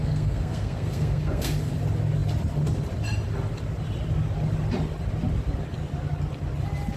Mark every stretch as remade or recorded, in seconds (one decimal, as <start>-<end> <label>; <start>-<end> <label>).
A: 0.0-1.7 remade; 1.7-7.0 recorded